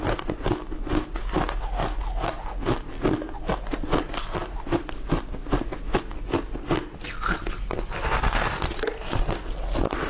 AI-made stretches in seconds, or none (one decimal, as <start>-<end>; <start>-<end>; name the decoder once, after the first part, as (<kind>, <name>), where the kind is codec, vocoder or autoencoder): none